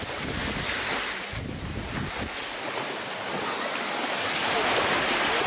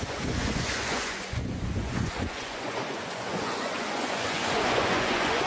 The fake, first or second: second